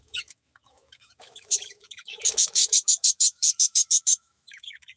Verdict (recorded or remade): remade